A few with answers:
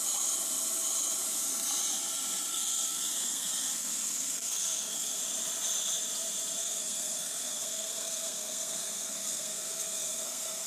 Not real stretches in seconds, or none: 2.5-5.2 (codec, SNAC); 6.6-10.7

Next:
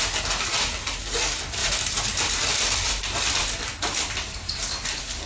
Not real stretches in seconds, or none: 1.6-3.6 (vocoder, BigVGAN v2)

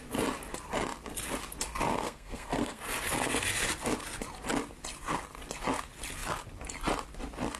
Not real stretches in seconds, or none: 1.9-2.8 (codec, SNAC)